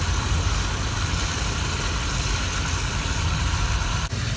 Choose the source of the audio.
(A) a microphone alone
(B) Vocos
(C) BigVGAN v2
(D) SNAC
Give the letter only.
A